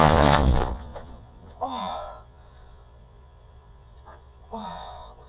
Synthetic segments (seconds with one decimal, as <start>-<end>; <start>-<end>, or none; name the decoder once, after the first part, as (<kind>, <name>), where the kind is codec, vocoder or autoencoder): 0.0-5.3 (vocoder, Vocos)